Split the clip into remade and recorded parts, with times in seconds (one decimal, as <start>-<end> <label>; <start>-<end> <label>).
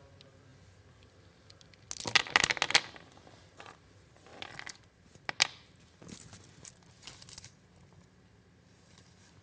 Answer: 0.0-9.4 recorded